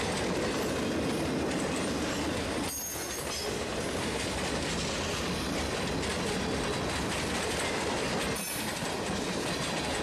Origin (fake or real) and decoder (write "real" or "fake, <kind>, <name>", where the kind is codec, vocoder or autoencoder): real